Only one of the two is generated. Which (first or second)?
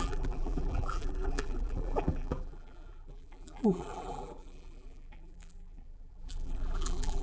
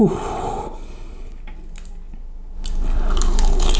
first